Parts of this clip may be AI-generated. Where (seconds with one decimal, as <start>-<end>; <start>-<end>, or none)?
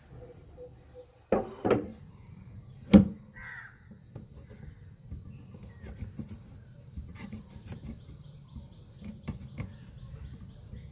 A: 1.9-2.9; 5.6-8.7